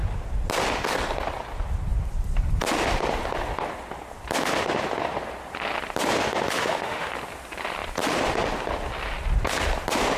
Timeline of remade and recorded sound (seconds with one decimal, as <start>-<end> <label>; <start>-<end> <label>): 0.0-6.6 recorded; 6.6-7.1 remade; 7.1-10.2 recorded